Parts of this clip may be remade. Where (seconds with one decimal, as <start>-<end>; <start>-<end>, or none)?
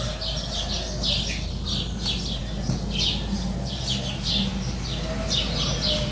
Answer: none